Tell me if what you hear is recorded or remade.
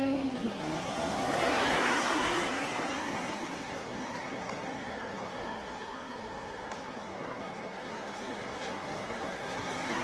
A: remade